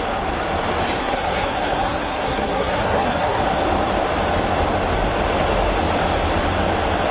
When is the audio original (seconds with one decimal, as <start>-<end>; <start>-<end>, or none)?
0.0-1.0; 3.4-7.1